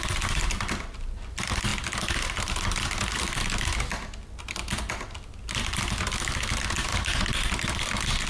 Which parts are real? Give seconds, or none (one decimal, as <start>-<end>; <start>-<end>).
1.7-6.5; 6.9-7.5